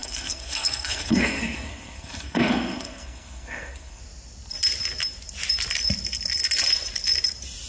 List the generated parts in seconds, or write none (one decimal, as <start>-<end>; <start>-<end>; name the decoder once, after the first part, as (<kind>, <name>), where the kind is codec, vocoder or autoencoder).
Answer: 0.0-4.0 (codec, SNAC)